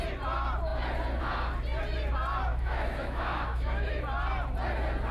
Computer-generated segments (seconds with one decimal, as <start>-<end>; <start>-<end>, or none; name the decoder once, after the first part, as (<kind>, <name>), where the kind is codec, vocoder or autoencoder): 2.5-4.0 (autoencoder, DAC-VAE)